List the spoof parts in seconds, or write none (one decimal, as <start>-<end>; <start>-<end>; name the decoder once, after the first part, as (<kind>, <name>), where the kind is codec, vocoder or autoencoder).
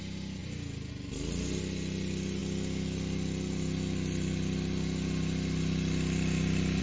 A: none